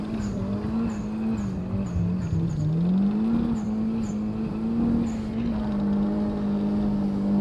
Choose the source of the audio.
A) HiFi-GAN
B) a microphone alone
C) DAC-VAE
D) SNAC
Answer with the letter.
B